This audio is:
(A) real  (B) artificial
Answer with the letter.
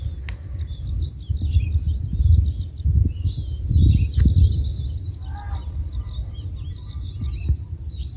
A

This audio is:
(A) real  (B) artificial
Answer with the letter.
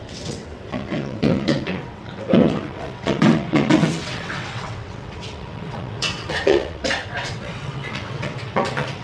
B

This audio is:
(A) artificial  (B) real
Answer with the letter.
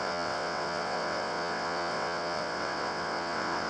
A